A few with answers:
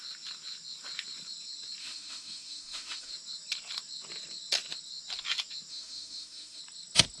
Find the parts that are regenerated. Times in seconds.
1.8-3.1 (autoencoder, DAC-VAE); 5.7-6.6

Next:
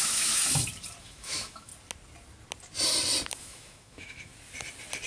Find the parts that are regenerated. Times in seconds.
0.0-0.4 (autoencoder, DAC-VAE); 1.0-1.7; 3.4-4.3

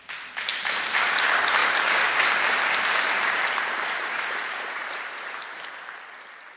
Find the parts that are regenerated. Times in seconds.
0.5-1.0 (vocoder, BigVGAN v2); 1.6-5.6

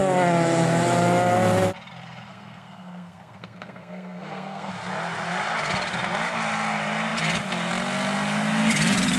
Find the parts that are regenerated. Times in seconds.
2.3-4.7 (codec, SNAC)

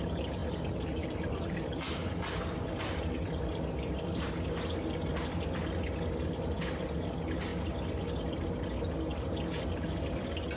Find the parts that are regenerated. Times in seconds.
0.4-4.3 (vocoder, BigVGAN v2)

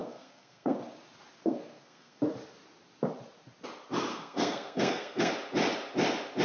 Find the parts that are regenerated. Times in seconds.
0.0-0.8 (codec, SNAC); 1.4-2.2; 4.1-5.3

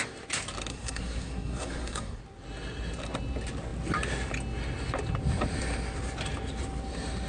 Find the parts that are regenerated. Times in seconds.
0.7-2.2 (codec, SNAC)

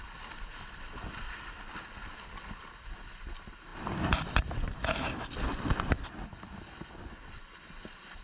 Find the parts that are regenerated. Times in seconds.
none